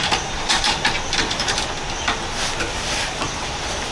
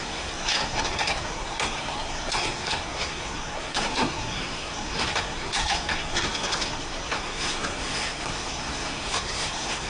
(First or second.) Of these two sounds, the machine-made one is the second